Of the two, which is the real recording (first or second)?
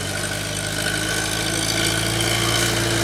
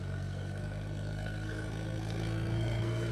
first